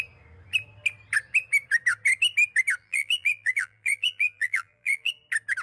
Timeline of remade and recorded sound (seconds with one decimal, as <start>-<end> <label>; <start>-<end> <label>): 0.0-2.8 recorded; 2.8-5.1 remade; 5.1-5.6 recorded